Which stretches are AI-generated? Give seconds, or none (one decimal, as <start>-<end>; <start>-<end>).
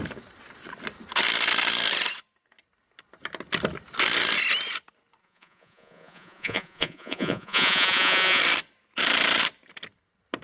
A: 5.2-8.4